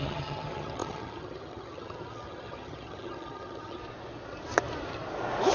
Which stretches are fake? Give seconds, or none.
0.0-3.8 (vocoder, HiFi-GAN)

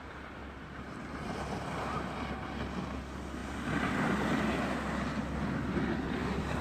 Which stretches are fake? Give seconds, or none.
none

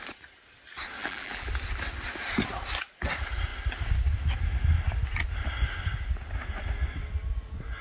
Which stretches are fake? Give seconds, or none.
1.0-1.5 (vocoder, BigVGAN v2)